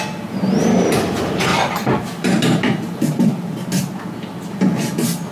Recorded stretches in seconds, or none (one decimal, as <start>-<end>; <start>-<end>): 0.0-1.5; 3.7-5.3